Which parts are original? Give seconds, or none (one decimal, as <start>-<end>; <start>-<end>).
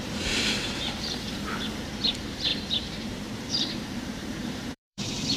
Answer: none